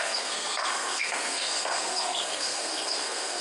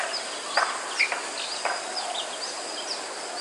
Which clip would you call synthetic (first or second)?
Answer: first